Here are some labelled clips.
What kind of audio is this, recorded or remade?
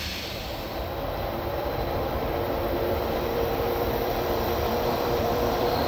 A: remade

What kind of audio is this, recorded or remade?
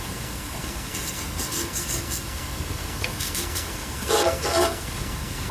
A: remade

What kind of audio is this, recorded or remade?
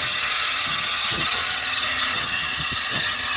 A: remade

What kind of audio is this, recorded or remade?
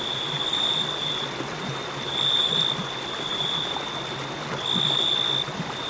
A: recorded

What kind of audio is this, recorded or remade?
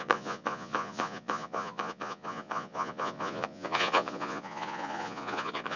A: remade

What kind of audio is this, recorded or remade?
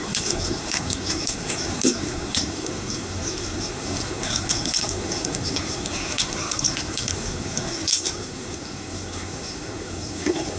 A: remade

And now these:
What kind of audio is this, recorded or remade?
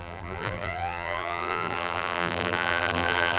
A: remade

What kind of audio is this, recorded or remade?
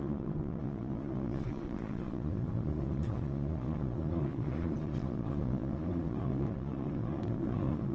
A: remade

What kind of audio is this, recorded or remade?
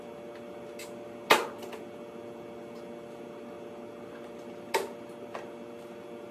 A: recorded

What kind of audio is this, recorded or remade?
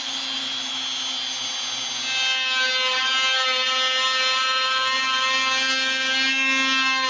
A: recorded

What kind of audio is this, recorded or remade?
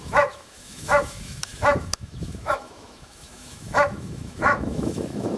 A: remade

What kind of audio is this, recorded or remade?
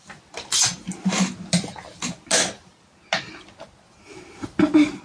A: recorded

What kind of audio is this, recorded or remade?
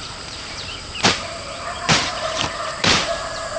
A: remade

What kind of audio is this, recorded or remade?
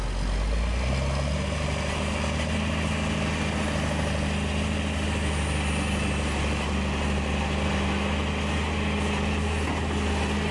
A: recorded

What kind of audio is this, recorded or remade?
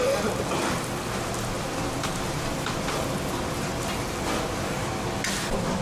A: recorded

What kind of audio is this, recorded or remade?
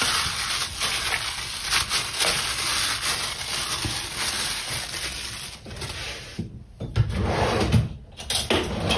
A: recorded